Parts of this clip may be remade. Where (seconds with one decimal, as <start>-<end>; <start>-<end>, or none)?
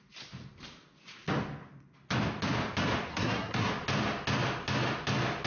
3.1-3.7